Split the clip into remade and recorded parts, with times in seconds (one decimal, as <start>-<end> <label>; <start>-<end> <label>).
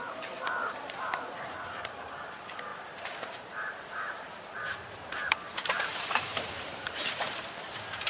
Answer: 0.0-8.1 remade